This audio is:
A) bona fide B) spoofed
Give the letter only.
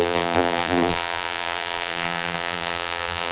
B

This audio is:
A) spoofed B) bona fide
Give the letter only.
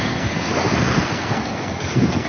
A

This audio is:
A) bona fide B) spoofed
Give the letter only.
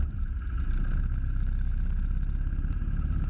A